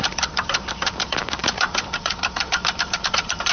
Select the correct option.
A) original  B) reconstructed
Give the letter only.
B